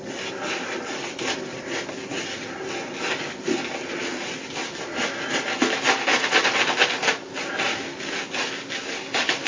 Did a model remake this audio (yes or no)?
no